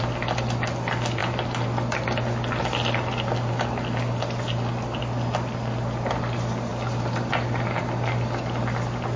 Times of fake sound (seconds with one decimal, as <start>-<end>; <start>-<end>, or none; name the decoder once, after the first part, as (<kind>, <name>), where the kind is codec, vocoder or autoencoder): none